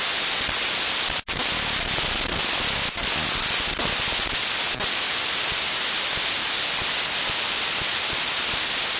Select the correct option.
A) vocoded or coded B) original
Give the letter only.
B